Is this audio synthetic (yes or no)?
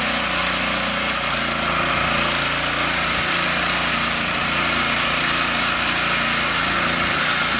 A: no